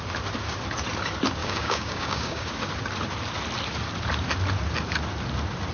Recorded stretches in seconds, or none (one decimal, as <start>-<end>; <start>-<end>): 0.0-1.4; 2.5-5.7